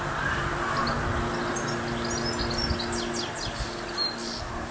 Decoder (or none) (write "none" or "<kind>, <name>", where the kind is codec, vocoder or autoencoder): none